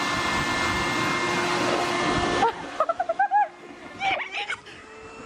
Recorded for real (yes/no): yes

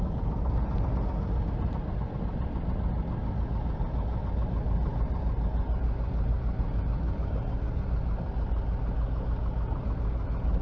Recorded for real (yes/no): yes